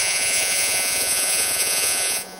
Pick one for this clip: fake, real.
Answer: fake